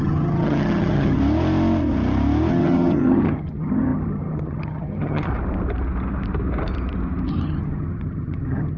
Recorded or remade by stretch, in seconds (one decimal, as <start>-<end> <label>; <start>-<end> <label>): 0.0-1.2 remade; 1.2-2.5 recorded; 2.5-5.3 remade; 5.3-7.3 recorded; 7.3-8.8 remade